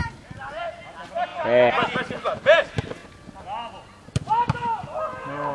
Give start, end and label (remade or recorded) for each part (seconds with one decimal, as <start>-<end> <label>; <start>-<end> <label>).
0.0-5.5 recorded